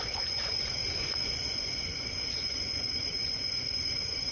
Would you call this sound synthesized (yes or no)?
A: yes